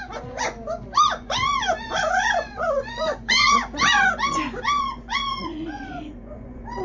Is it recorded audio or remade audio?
remade